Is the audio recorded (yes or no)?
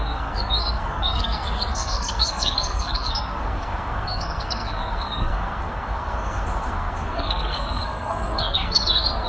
no